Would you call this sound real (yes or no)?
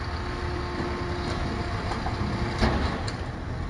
yes